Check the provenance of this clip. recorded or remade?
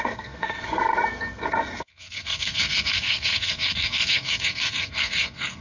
remade